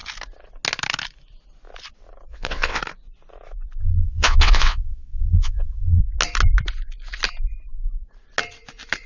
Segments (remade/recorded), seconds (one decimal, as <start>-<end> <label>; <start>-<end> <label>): 0.0-2.3 recorded; 2.3-2.8 remade; 2.8-3.8 recorded; 3.8-6.0 remade; 6.0-9.1 recorded